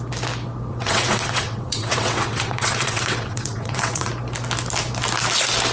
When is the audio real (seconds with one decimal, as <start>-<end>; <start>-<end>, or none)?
0.0-0.7; 4.1-5.7

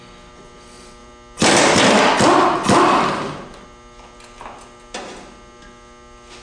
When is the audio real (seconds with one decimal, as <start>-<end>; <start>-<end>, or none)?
0.0-6.4

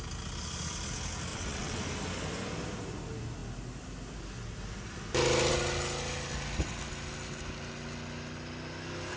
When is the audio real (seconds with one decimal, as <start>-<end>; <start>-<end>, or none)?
0.0-1.3; 1.8-9.2

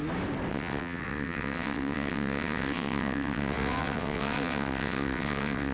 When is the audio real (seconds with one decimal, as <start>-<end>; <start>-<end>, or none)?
0.0-0.5

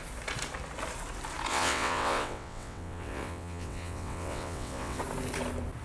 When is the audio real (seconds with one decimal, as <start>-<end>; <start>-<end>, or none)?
0.0-1.5; 5.0-5.8

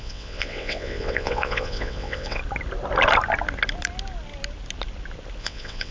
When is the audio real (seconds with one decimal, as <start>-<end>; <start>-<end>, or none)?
2.4-5.4